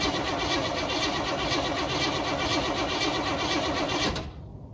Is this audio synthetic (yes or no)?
no